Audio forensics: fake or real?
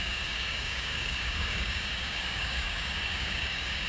fake